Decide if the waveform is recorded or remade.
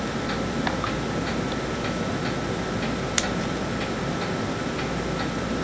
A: recorded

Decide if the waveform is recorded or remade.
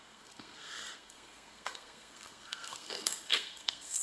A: remade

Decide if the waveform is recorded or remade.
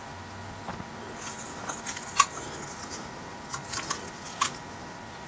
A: recorded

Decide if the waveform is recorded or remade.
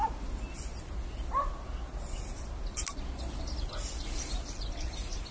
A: recorded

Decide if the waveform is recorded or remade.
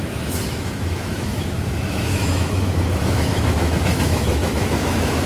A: remade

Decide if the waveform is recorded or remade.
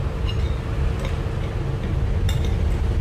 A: recorded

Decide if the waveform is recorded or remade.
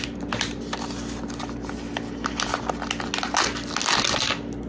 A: recorded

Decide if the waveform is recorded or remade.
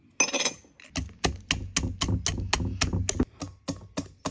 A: recorded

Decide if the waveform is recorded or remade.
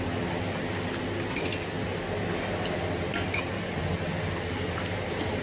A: recorded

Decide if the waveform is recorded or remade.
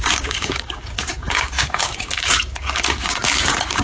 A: remade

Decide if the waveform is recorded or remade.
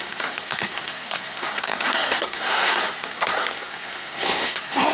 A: remade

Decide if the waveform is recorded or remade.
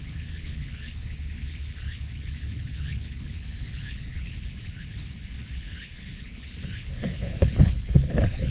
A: remade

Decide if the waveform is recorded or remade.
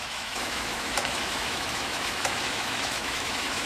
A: remade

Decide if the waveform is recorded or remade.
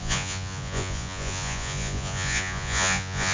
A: remade